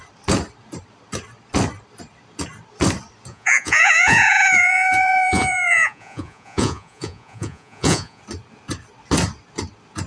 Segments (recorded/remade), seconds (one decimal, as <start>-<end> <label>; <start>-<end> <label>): 0.0-3.3 recorded; 3.3-8.2 remade; 8.2-10.1 recorded